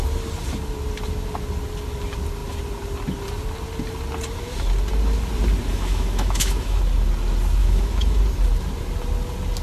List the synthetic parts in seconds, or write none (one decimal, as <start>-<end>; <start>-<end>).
5.7-6.8; 7.6-8.2